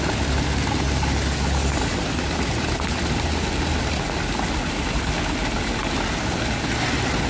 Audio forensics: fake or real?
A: real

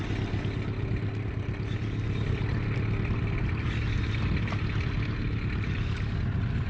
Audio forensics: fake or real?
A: real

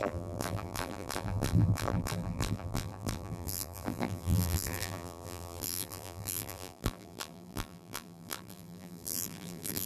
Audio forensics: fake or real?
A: fake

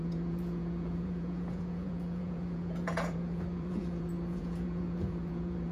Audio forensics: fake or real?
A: fake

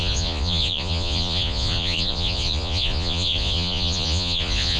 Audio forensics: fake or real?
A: fake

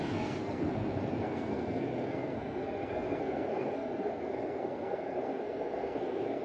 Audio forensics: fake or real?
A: fake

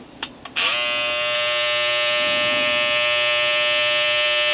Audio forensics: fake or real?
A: real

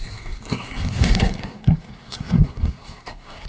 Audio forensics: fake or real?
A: fake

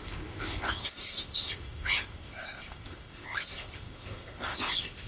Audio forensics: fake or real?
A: fake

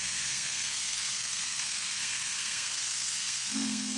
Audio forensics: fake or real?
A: fake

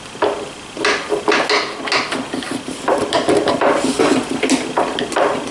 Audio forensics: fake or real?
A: real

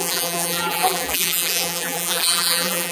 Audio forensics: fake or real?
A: fake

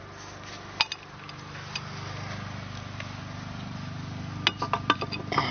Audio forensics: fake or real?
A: real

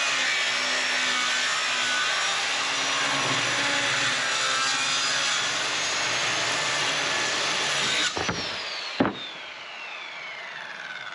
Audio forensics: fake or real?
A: real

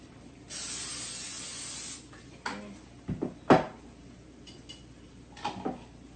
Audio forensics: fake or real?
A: real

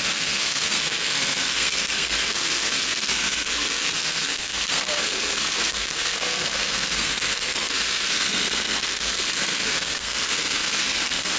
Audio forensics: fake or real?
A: fake